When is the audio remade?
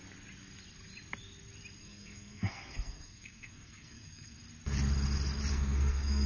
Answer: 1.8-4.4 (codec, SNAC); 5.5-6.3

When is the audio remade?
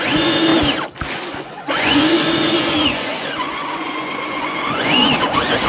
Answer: 0.0-0.5 (vocoder, Vocos); 1.1-5.7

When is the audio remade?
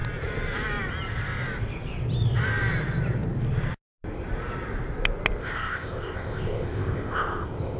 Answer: 5.4-7.8 (codec, ZipCodec)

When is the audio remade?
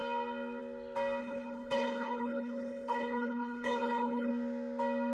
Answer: 1.2-4.3 (codec, HILCodec)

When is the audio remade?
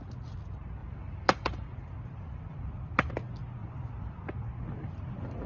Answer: 0.8-3.1 (vocoder, BigVGAN v2); 3.6-5.5